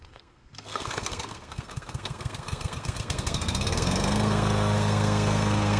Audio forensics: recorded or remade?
remade